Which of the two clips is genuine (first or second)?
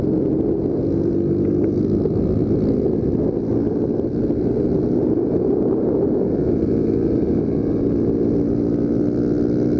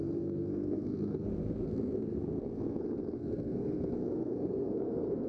first